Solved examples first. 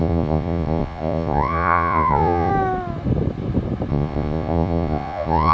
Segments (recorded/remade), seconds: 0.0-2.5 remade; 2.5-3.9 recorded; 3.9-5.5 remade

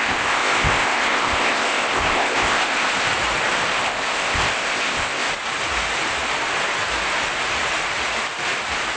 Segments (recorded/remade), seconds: 0.0-3.1 remade; 3.1-3.7 recorded; 3.7-5.3 remade; 5.3-9.0 recorded

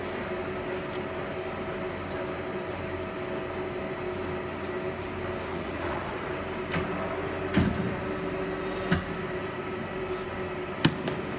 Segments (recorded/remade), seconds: 0.0-5.5 recorded; 5.5-6.3 remade; 6.3-11.4 recorded

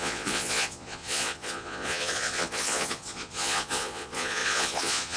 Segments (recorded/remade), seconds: 0.0-5.2 remade